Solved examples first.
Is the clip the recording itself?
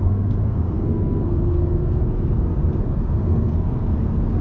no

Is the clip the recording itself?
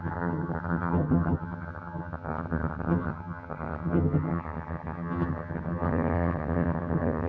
no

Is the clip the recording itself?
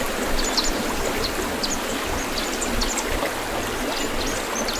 yes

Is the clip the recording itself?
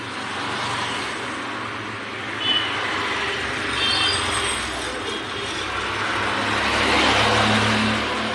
yes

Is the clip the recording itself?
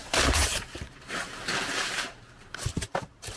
no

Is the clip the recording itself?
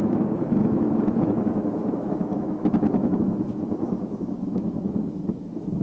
no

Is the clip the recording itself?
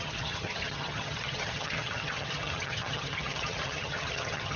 no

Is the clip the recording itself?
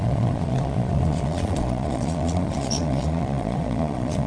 no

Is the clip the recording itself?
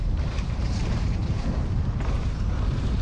no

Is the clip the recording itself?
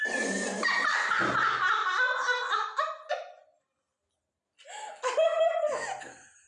yes